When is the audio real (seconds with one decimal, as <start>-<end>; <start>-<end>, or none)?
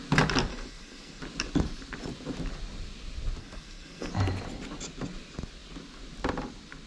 0.0-0.5; 1.2-3.4; 4.1-6.9